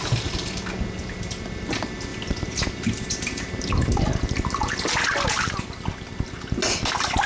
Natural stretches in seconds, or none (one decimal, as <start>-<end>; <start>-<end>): 0.0-2.1; 5.6-7.3